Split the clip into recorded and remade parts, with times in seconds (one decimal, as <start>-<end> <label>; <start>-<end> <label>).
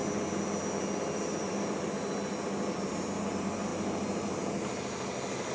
0.0-5.5 recorded